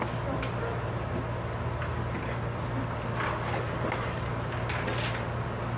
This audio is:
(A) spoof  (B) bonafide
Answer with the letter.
B